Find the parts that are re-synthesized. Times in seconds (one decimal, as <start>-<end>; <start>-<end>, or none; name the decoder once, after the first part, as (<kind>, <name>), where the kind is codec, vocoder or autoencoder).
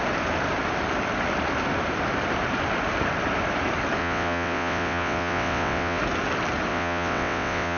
4.0-6.0 (vocoder, WaveNeXt); 6.7-7.8